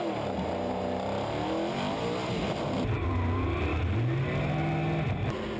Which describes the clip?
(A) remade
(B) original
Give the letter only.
B